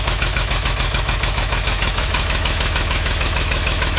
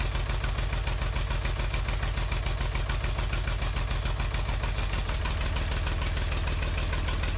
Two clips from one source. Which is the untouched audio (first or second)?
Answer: second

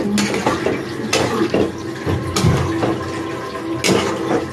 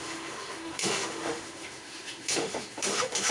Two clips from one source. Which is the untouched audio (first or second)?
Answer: first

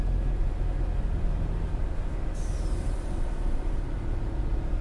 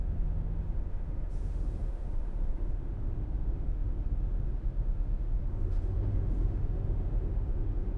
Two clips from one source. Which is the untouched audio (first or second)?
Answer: first